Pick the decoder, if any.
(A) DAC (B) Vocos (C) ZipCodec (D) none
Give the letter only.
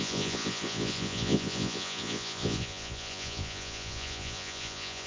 B